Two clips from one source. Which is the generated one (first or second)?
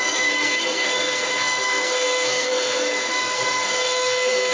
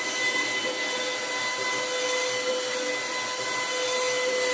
first